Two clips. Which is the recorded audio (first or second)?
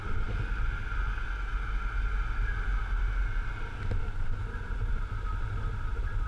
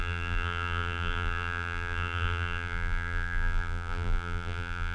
first